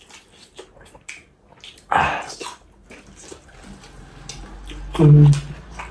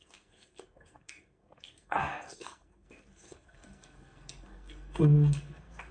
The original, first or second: first